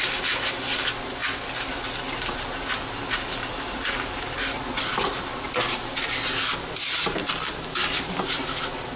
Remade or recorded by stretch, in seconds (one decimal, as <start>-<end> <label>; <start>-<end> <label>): 0.0-9.0 recorded